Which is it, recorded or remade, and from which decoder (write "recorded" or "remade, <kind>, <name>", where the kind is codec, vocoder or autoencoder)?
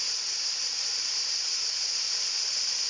recorded